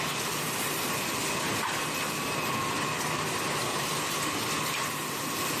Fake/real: fake